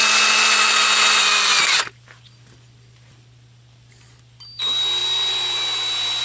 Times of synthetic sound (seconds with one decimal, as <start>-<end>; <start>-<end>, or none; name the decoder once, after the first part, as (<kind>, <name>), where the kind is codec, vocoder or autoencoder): none